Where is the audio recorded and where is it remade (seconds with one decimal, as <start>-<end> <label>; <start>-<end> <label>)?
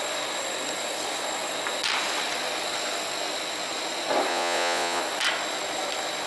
0.0-4.3 recorded; 4.3-5.0 remade; 5.0-6.3 recorded